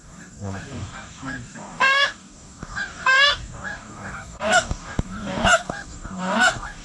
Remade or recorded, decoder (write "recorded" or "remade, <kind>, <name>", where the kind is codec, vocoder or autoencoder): remade, codec, DAC